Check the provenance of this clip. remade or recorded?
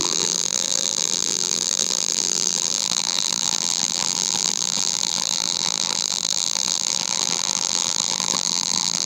remade